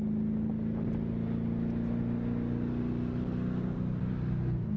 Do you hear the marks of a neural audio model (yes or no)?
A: no